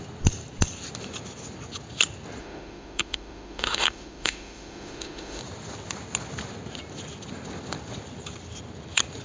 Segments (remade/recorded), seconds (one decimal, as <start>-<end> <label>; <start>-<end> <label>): 0.0-2.4 recorded; 2.4-5.4 remade; 5.4-9.2 recorded